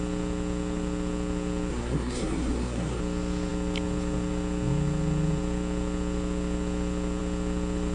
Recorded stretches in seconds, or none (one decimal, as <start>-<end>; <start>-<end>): 0.0-1.7; 3.0-7.9